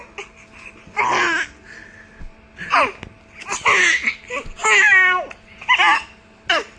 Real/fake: real